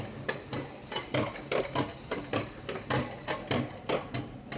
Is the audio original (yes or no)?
yes